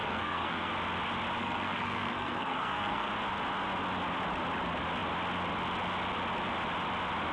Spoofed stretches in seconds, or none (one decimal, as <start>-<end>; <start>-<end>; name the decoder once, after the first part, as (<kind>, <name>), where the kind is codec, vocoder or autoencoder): 0.0-0.7 (codec, SNAC); 1.4-3.1